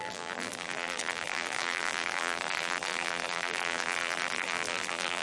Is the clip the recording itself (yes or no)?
no